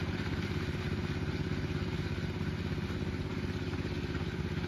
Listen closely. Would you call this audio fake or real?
real